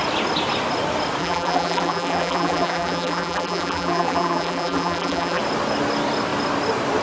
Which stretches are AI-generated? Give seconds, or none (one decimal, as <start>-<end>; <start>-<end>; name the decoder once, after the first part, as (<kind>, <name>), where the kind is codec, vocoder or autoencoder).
1.2-5.4 (vocoder, BigVGAN v2)